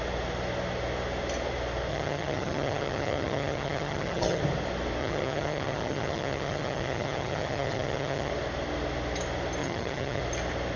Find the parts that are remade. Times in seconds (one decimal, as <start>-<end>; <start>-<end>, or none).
1.9-4.4; 5.0-8.3; 9.6-10.2